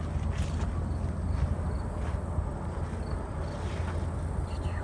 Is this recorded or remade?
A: recorded